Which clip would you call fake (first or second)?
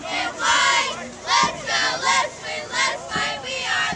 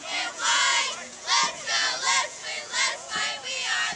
second